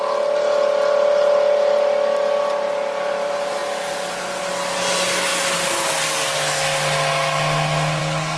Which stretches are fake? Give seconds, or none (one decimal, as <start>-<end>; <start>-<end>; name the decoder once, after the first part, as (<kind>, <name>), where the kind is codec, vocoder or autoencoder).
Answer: none